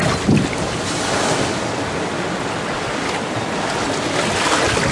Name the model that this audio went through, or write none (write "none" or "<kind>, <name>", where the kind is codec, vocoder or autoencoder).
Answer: none